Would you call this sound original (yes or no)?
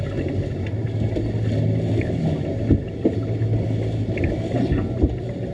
yes